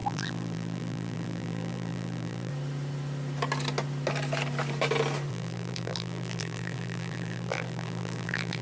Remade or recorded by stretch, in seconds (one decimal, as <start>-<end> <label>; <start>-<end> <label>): 0.0-2.5 remade; 2.5-5.3 recorded; 5.3-8.6 remade